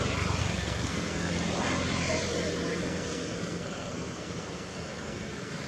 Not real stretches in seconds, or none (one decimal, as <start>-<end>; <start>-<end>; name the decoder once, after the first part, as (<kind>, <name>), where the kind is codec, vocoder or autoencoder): 0.4-1.3 (codec, SNAC); 2.7-5.7